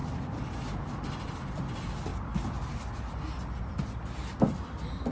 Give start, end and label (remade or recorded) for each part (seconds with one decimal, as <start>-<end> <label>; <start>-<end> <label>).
0.0-5.1 recorded